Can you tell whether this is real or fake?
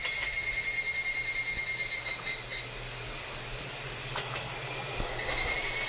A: real